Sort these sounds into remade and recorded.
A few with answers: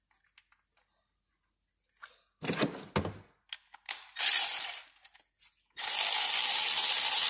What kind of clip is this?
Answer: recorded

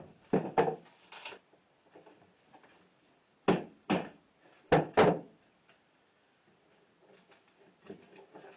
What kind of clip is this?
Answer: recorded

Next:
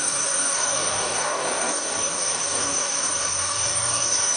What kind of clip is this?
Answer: remade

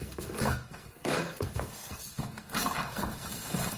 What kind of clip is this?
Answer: remade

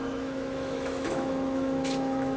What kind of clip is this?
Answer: remade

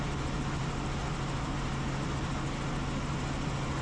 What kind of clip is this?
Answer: recorded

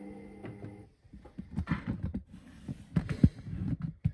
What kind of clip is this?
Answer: recorded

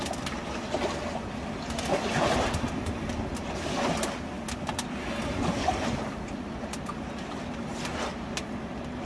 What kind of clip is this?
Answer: recorded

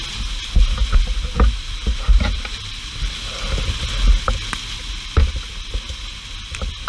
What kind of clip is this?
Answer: recorded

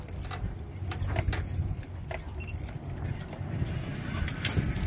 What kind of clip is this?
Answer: recorded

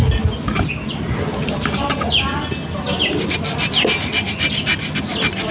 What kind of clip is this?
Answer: recorded